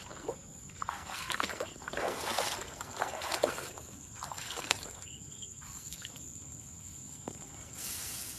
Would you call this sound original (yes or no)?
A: no